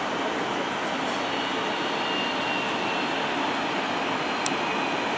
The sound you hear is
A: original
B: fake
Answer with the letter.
A